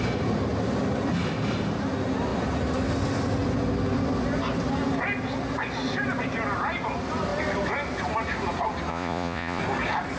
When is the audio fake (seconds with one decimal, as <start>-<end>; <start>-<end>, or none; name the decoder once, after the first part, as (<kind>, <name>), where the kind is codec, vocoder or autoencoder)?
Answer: 8.9-9.6 (vocoder, Vocos)